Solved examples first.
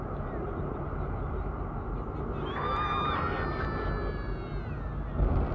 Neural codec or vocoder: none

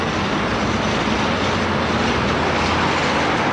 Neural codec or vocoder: none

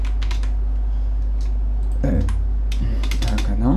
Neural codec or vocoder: none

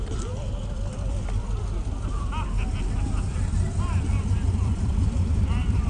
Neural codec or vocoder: vocoder, BigVGAN v2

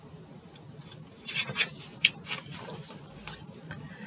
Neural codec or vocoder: none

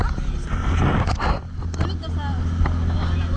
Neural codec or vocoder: none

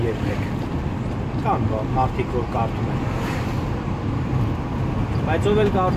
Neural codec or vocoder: none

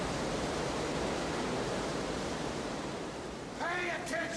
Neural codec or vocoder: vocoder, BigVGAN v2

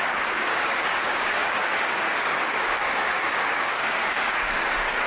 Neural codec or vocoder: codec, DAC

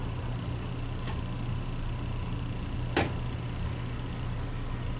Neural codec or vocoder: none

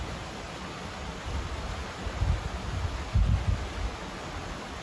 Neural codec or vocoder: none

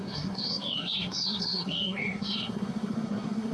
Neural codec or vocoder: codec, SNAC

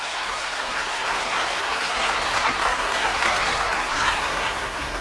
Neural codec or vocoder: codec, SNAC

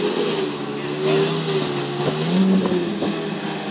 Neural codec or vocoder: none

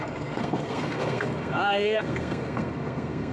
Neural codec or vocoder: codec, SNAC